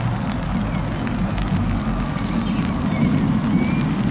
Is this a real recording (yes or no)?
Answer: yes